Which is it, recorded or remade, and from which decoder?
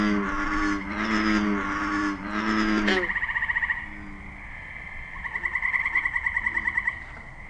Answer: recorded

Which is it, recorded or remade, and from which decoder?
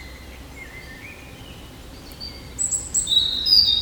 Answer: recorded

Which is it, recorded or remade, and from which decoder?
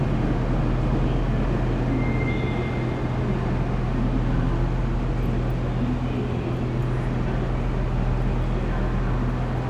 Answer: recorded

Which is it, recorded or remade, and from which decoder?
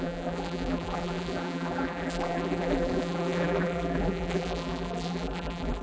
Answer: remade, vocoder, BigVGAN v2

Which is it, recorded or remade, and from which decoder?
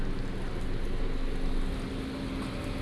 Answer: recorded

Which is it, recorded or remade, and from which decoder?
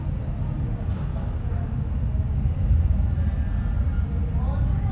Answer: recorded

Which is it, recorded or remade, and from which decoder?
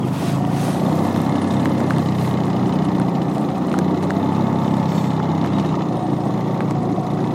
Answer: recorded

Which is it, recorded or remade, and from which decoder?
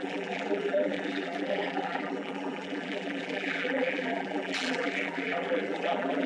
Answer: remade, vocoder, BigVGAN v2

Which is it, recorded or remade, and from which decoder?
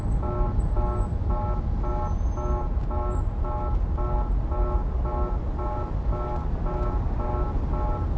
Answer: recorded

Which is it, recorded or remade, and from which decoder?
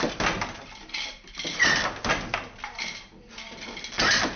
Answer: recorded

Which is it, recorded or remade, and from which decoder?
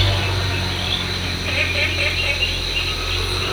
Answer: recorded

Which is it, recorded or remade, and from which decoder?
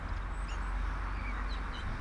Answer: recorded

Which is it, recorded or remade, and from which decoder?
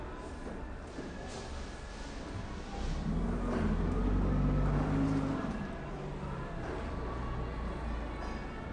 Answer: recorded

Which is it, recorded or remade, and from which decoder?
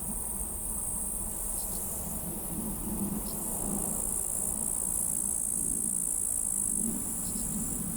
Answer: recorded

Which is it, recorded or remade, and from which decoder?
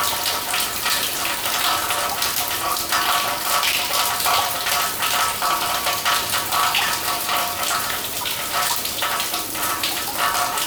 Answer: remade, vocoder, BigVGAN v2